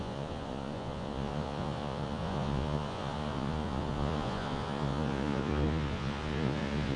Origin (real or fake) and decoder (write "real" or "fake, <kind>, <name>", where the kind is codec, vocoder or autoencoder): fake, vocoder, Vocos